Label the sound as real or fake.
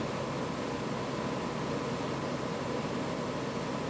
real